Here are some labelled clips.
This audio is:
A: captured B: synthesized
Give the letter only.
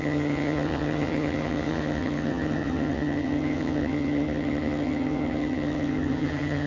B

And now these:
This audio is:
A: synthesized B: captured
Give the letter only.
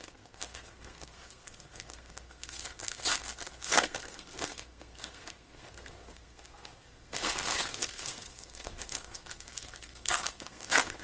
A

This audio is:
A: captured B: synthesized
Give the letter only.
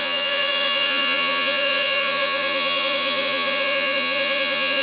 B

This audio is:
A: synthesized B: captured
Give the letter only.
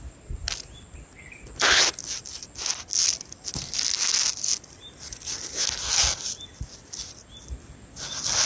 B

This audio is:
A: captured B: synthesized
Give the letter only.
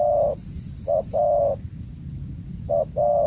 B